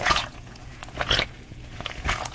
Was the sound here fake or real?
fake